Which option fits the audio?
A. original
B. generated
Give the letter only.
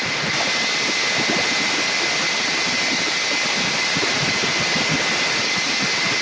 A